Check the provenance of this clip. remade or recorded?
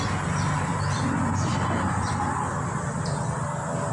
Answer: recorded